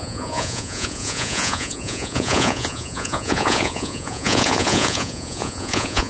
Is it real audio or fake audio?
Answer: fake